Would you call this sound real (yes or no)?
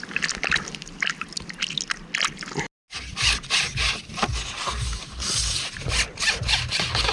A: yes